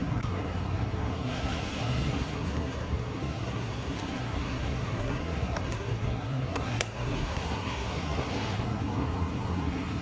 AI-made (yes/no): yes